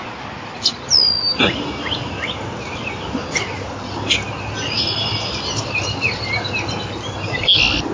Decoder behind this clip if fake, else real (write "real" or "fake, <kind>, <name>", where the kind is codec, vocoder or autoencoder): real